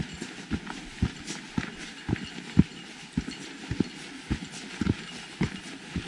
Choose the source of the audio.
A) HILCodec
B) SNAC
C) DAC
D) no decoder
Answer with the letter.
D